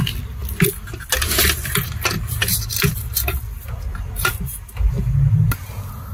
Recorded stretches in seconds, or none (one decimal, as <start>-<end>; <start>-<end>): 0.0-6.1